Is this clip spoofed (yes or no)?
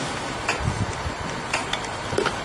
no